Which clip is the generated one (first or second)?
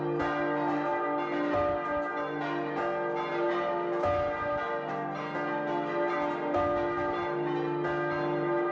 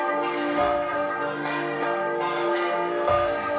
second